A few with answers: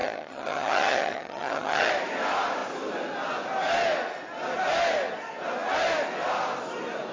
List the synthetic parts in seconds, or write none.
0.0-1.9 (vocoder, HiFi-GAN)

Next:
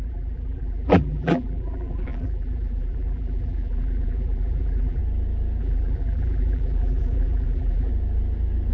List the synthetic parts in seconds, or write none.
0.0-5.0 (vocoder, BigVGAN v2); 5.6-7.9